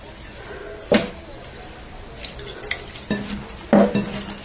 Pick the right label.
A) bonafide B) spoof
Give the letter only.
A